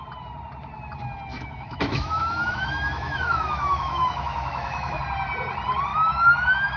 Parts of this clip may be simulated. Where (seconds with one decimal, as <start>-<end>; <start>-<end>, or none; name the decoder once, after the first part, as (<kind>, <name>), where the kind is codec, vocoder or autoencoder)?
1.3-5.0 (autoencoder, DAC-VAE); 5.9-6.8